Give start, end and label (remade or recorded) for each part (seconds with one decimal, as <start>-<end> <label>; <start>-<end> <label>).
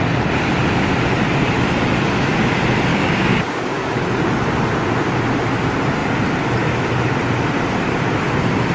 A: 0.0-2.9 recorded; 2.9-3.8 remade; 3.8-8.7 recorded